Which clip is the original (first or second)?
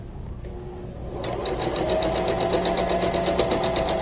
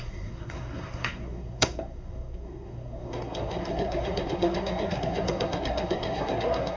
first